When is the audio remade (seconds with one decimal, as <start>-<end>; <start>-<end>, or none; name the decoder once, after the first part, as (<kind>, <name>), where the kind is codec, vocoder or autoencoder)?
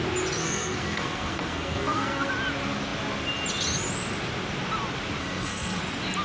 0.4-2.3 (codec, SNAC); 5.2-5.8